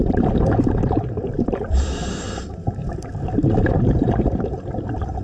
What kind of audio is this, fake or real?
fake